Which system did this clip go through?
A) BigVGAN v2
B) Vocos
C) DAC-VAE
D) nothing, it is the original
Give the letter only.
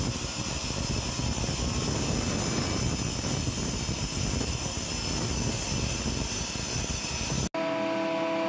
D